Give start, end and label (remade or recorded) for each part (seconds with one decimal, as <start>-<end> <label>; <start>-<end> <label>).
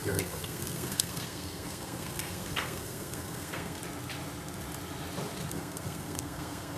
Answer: 0.0-3.8 remade; 3.8-5.5 recorded; 5.5-6.8 remade